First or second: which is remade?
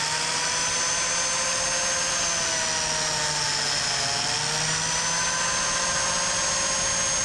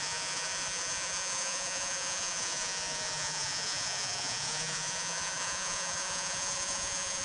second